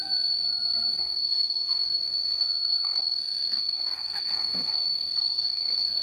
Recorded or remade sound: remade